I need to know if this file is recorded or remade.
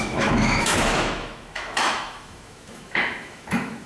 remade